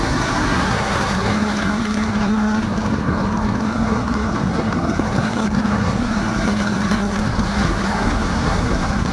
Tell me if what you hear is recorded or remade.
remade